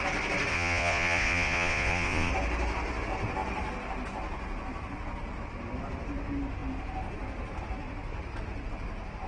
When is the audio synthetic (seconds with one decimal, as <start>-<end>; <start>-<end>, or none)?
0.5-2.3